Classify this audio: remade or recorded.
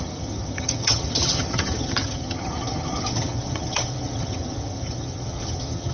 remade